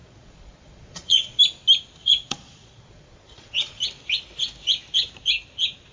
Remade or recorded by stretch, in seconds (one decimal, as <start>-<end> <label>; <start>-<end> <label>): 0.0-1.4 remade; 1.4-2.0 recorded; 2.0-3.8 remade; 3.8-5.9 recorded